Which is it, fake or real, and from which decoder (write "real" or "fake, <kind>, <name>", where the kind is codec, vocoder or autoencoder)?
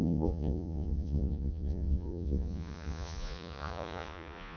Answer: fake, vocoder, Vocos